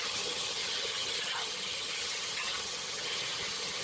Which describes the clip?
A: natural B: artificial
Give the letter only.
B